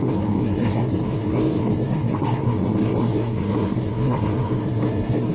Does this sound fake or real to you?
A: fake